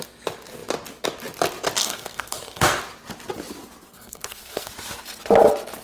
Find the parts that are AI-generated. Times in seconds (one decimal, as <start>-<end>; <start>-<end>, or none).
1.8-2.8; 3.8-4.7